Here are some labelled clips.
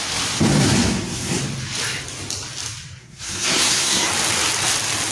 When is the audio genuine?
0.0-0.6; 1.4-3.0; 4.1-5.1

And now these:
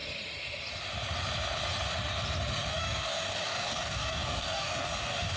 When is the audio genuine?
0.0-2.7

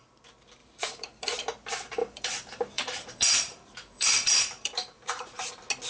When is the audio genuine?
0.0-0.6; 1.4-2.0; 5.5-5.9

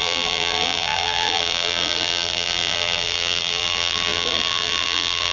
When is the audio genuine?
none